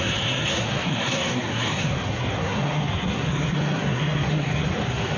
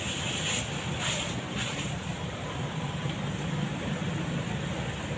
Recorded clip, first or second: second